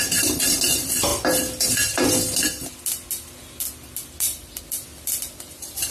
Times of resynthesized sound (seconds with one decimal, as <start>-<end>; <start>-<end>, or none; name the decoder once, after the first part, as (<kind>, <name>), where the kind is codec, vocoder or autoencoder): none

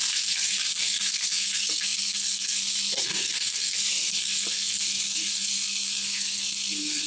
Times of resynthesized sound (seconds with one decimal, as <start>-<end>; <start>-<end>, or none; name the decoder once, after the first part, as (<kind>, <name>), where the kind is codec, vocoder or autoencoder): 0.0-7.1 (codec, SNAC)

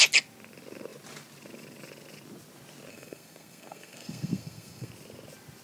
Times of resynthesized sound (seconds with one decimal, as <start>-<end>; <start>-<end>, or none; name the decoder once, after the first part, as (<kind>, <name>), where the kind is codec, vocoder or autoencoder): 2.9-4.9 (codec, SNAC)

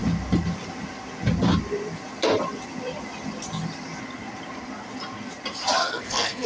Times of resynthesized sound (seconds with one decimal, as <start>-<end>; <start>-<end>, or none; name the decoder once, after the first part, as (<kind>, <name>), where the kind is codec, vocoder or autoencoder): 5.8-6.5 (codec, SNAC)

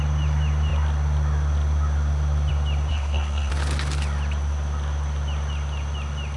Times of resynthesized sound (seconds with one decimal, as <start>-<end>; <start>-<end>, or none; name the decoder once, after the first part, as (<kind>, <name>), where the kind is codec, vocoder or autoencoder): 2.9-3.5 (codec, SNAC)

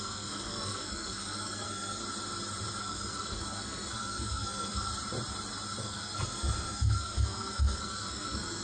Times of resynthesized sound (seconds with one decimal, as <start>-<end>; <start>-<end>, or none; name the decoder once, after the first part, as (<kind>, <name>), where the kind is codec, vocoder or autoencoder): 0.0-2.0 (codec, SNAC); 2.8-4.9; 5.8-8.6